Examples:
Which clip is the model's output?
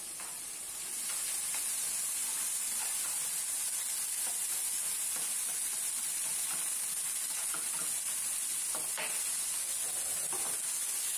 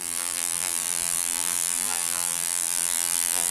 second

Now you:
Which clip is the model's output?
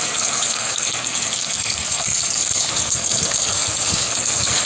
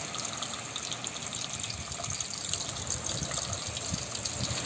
first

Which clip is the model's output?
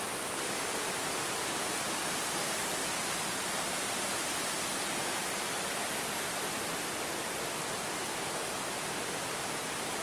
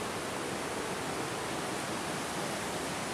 first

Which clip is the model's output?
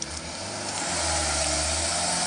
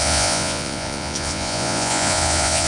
second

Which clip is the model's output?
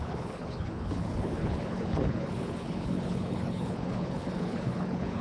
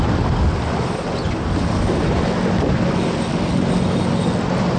first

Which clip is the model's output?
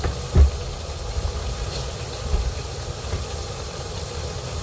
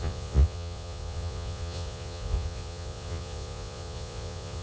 second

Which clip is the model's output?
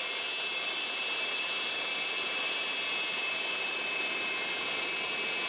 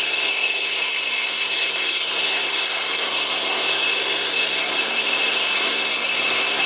second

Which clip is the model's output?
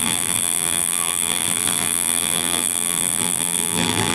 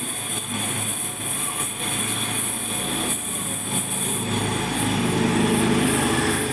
first